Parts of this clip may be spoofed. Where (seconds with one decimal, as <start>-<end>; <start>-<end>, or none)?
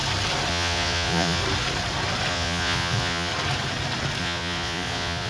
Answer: 0.5-1.4; 2.3-3.3; 4.2-5.3